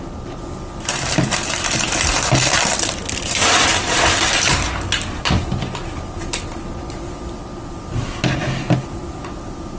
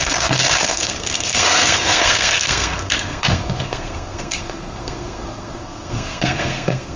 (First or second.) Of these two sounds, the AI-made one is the second